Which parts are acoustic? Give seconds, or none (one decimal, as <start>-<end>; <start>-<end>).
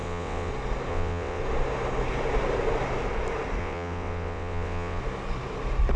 0.5-0.9; 1.4-3.6; 5.0-6.0